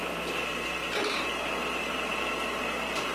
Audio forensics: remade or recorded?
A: recorded